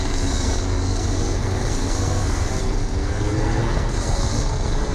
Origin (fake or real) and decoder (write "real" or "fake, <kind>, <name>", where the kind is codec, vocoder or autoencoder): fake, codec, SNAC